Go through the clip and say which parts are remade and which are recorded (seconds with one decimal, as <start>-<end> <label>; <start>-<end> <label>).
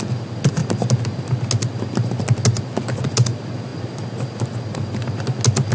0.0-5.7 recorded